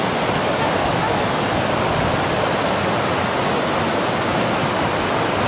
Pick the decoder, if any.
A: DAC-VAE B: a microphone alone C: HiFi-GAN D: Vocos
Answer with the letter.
B